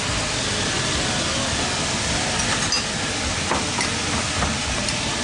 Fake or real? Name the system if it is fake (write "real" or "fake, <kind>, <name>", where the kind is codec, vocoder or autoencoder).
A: real